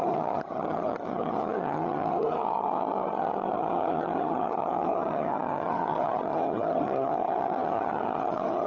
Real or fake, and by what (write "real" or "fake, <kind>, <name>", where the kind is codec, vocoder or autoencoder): fake, vocoder, HiFi-GAN